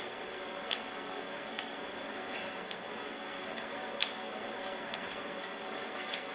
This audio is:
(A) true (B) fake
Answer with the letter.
B